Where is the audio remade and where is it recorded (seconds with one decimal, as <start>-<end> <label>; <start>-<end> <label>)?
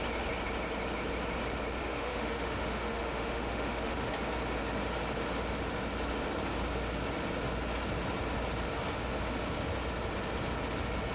0.0-1.8 recorded; 1.8-4.1 remade; 4.1-11.1 recorded